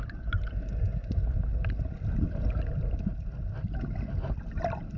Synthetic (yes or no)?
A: no